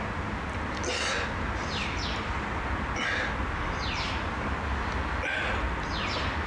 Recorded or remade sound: recorded